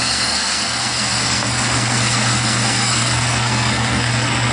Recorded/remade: remade